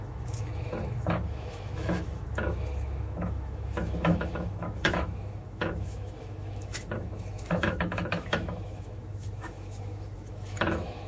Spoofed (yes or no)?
yes